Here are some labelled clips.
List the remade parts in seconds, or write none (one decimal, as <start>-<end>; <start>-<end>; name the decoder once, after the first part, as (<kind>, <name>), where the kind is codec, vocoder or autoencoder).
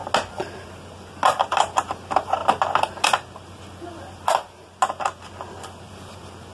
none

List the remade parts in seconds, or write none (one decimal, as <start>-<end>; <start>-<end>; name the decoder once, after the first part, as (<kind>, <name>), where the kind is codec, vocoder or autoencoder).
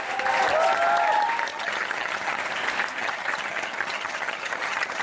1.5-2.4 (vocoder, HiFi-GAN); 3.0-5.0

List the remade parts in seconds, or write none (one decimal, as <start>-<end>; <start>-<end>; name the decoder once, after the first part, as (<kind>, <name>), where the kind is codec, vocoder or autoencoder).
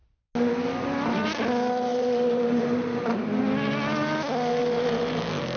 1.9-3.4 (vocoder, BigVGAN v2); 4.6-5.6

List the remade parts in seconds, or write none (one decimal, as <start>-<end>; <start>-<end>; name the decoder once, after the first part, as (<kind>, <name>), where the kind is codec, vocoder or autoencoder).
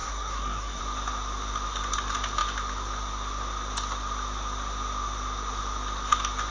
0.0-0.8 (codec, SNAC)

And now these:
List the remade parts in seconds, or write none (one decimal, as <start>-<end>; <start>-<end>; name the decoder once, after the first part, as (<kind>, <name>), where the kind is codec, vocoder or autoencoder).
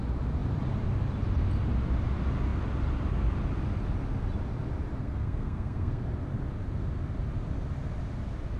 5.0-6.0 (codec, SNAC)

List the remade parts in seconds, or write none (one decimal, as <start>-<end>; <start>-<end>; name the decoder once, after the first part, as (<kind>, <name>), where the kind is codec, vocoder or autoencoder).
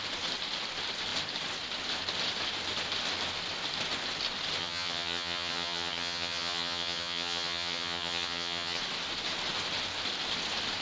4.6-8.8 (vocoder, HiFi-GAN)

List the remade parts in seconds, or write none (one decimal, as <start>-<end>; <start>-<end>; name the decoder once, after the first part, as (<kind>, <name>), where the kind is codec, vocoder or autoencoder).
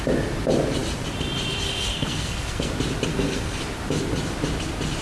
1.9-2.7 (codec, SNAC); 3.1-3.6